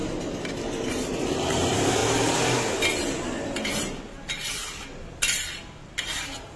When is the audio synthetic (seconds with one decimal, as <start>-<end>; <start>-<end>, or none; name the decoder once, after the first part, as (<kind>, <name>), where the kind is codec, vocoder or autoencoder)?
0.9-2.0 (vocoder, BigVGAN v2); 6.0-6.6